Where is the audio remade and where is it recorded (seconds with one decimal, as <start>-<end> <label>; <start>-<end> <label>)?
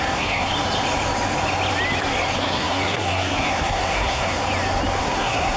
0.0-0.5 remade; 0.5-2.4 recorded; 2.4-4.4 remade; 4.4-5.0 recorded; 5.0-5.6 remade